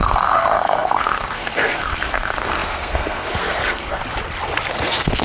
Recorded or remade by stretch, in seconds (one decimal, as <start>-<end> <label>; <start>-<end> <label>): 0.0-4.0 remade; 4.0-4.7 recorded; 4.7-5.2 remade